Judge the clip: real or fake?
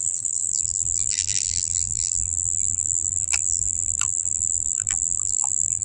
fake